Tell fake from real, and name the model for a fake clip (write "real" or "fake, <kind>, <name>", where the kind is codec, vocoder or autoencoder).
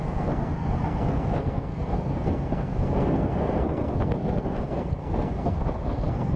fake, codec, SNAC